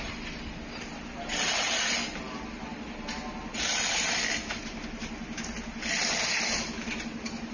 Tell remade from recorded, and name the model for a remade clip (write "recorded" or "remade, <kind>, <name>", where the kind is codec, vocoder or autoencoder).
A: recorded